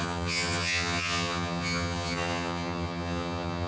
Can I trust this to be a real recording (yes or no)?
no